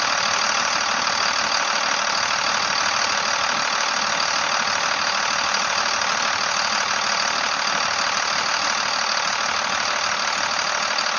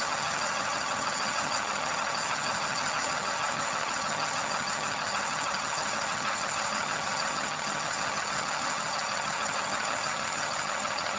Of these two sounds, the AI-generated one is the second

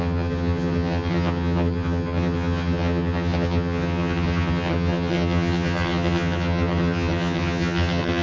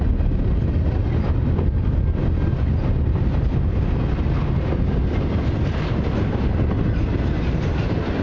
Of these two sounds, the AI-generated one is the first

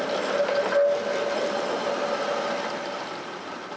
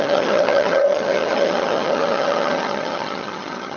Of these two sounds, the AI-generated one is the second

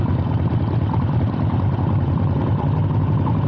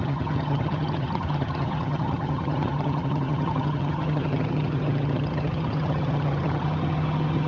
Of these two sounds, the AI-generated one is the second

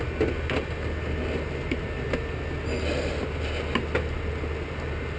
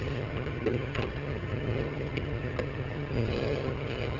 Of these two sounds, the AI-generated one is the second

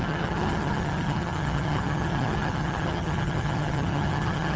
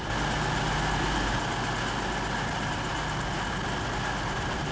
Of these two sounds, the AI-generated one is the first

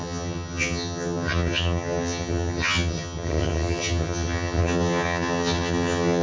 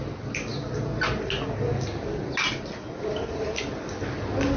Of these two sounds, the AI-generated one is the first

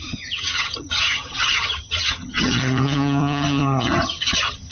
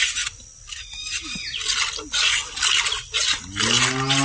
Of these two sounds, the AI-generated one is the first